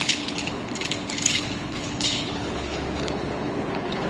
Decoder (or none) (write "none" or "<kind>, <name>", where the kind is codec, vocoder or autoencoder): codec, HILCodec